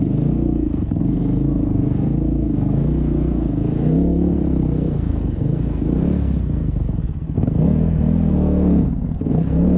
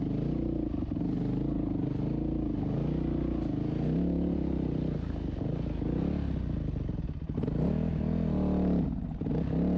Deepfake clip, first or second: first